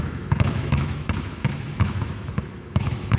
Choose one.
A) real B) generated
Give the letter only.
B